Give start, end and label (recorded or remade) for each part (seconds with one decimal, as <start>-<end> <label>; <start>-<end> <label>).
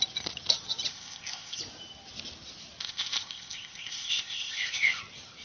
0.0-0.9 recorded; 0.9-1.6 remade; 1.6-2.8 recorded; 2.8-5.0 remade; 5.0-5.4 recorded